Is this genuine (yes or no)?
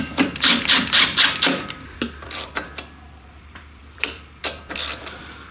no